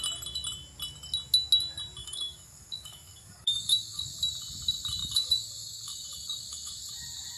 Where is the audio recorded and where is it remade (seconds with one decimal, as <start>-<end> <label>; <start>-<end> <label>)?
0.0-2.0 recorded; 2.0-4.3 remade; 4.3-5.0 recorded; 5.0-6.9 remade; 6.9-7.4 recorded